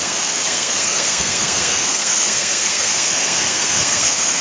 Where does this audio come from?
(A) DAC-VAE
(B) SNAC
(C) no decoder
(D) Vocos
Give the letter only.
B